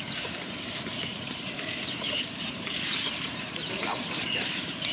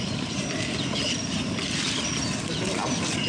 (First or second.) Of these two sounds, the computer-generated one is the first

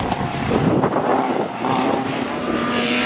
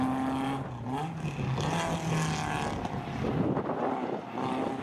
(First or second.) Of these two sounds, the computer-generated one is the first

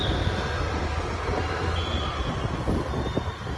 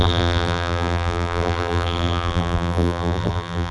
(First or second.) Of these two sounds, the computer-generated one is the second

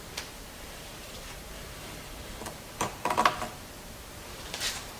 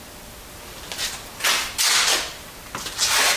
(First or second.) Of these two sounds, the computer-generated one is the first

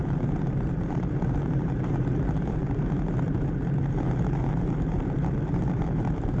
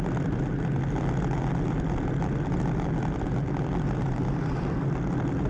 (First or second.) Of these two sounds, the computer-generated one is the first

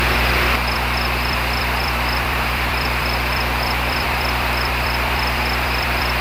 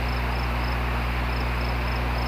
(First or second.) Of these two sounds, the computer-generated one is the first